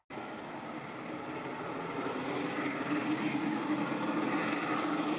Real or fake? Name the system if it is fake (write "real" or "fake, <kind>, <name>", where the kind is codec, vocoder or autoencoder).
real